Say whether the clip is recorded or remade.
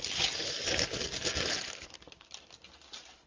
recorded